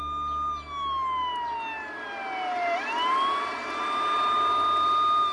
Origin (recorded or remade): recorded